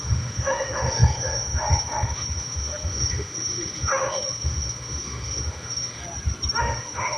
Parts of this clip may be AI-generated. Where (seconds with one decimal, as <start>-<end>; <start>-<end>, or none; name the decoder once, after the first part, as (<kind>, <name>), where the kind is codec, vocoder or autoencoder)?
0.0-6.0 (autoencoder, DAC-VAE); 6.6-7.2